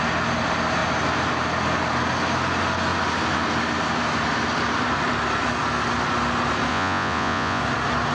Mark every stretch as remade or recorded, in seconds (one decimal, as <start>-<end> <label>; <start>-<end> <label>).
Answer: 0.0-6.7 recorded; 6.7-7.6 remade; 7.6-8.1 recorded